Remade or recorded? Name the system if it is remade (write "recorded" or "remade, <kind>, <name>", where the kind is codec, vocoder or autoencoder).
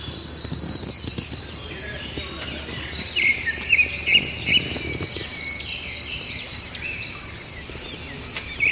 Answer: recorded